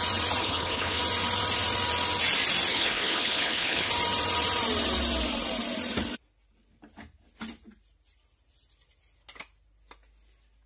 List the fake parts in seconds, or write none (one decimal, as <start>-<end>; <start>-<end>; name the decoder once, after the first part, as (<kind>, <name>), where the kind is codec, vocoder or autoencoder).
0.4-1.0 (codec, HILCodec); 2.7-3.9